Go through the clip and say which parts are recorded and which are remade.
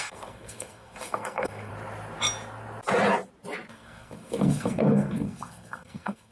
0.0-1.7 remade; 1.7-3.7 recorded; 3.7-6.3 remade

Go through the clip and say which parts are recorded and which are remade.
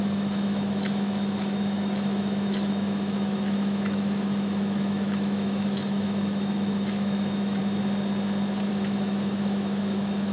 0.0-7.6 remade; 7.6-8.7 recorded; 8.7-10.3 remade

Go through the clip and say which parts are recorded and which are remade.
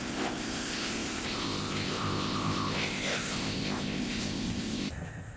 0.0-5.4 remade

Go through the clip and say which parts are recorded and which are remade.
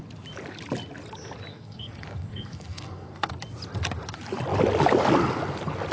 0.0-1.5 recorded; 1.5-3.3 remade; 3.3-5.9 recorded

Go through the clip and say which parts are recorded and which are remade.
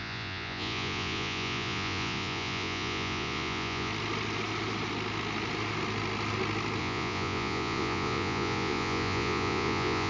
0.0-3.9 remade; 3.9-6.8 recorded; 6.8-10.1 remade